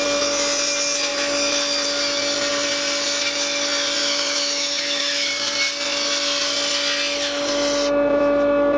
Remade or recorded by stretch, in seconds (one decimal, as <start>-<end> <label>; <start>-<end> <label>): 0.0-4.0 recorded; 4.0-5.3 remade; 5.3-8.8 recorded

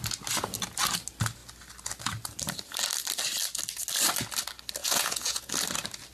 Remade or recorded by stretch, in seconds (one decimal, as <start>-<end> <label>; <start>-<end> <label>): 0.0-4.8 recorded; 4.8-5.5 remade; 5.5-6.1 recorded

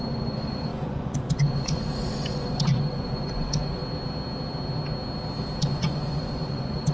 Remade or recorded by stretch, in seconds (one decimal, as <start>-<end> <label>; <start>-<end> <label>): 0.0-3.8 remade; 3.8-5.6 recorded; 5.6-6.9 remade

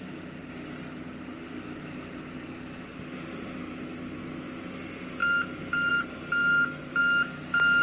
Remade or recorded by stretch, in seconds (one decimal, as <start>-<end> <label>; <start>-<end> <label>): 0.0-0.4 recorded; 0.4-4.2 remade; 4.2-6.4 recorded; 6.4-7.0 remade; 7.0-7.8 recorded